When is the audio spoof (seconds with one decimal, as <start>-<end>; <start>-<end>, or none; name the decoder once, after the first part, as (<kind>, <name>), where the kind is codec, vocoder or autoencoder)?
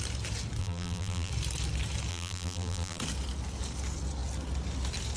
0.6-1.3 (vocoder, BigVGAN v2); 2.1-3.0